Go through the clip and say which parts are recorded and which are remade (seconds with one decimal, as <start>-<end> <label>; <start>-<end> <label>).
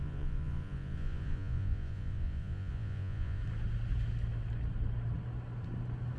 0.0-3.4 remade; 3.4-6.2 recorded